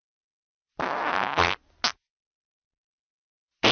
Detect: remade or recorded recorded